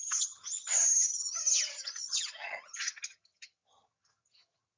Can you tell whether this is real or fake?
fake